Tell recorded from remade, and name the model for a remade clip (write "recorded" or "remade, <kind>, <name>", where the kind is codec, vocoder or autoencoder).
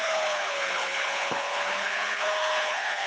remade, codec, HILCodec